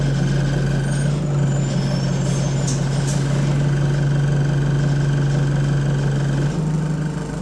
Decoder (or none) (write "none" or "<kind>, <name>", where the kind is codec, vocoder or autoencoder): none